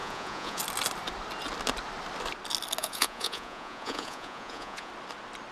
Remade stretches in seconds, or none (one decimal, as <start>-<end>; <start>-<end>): 0.0-0.6; 2.8-4.9